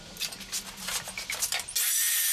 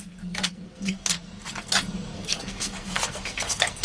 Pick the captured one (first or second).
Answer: first